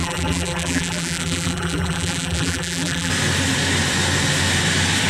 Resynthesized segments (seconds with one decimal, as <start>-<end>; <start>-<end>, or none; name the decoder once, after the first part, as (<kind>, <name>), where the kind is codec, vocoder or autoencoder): 0.0-3.1 (vocoder, BigVGAN v2)